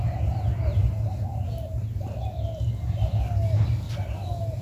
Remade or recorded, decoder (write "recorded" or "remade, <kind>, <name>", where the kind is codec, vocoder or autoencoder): recorded